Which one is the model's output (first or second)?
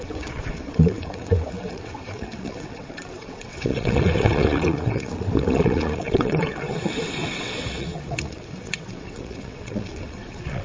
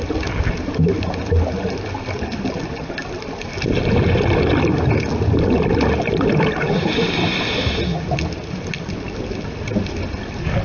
first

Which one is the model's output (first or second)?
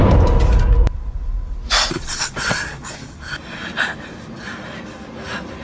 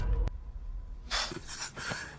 first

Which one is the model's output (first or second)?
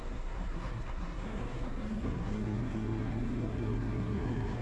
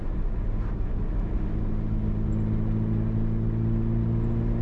first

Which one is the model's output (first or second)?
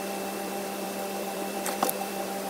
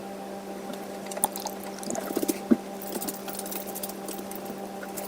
first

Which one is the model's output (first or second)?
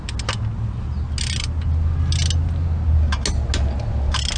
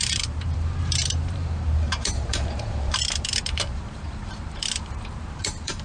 second